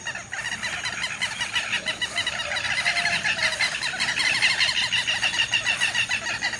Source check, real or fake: real